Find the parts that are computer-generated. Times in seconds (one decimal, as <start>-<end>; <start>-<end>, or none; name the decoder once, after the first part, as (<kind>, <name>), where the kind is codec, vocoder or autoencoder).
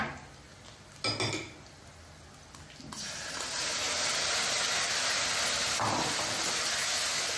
none